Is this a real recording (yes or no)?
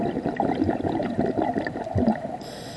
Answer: yes